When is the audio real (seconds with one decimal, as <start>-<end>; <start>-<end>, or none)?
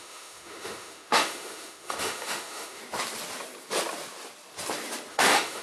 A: 2.8-5.1